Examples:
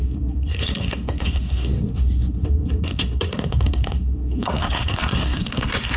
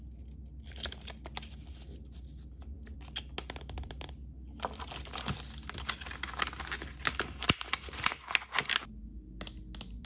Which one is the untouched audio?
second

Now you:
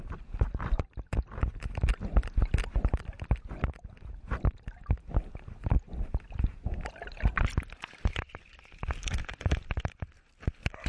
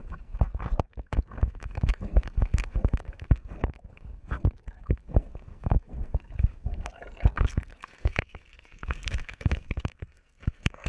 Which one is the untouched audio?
first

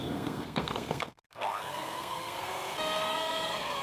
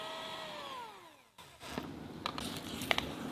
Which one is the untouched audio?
second